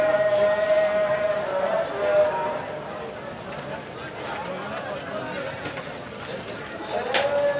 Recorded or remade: recorded